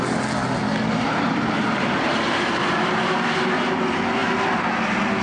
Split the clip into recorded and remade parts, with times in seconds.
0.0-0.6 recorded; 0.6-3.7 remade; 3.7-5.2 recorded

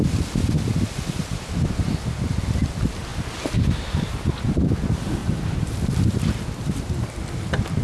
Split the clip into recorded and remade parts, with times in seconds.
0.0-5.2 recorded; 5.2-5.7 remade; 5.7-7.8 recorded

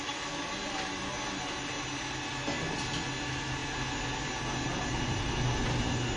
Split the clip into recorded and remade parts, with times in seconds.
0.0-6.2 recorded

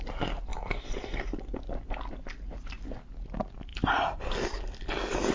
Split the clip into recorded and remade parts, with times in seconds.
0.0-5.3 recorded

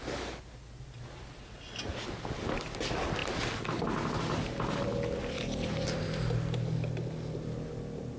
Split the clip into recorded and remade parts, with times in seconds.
0.0-8.2 recorded